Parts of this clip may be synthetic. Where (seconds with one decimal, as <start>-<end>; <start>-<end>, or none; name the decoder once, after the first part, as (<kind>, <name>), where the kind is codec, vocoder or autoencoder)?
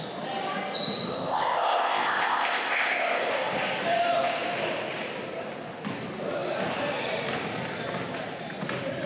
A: 1.1-3.3 (codec, ZipCodec)